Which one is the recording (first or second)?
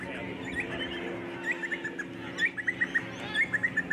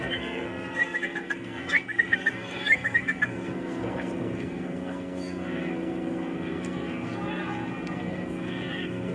first